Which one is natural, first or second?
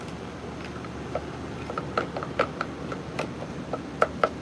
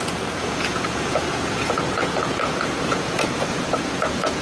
first